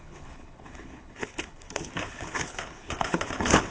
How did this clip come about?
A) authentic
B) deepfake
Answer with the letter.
B